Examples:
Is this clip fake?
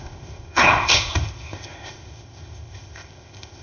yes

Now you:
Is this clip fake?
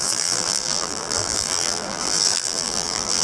yes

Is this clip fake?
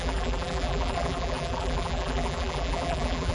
yes